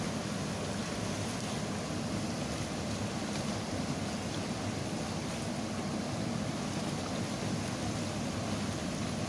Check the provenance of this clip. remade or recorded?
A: recorded